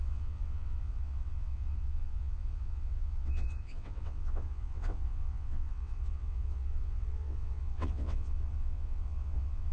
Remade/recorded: remade